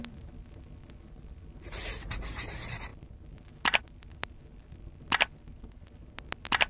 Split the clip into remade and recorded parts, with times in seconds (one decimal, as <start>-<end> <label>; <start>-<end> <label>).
0.0-6.7 recorded